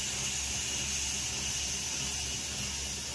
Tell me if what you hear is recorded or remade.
recorded